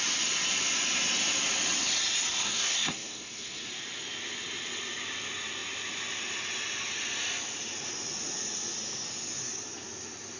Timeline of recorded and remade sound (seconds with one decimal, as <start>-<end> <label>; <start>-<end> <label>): 0.0-2.4 recorded; 2.4-3.7 remade; 3.7-10.4 recorded